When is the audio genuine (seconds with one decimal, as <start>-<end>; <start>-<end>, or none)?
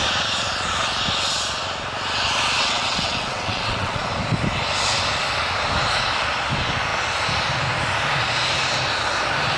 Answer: 0.0-2.6; 4.0-9.6